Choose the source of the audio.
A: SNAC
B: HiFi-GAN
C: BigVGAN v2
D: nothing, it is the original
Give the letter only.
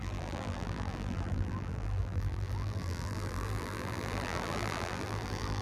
C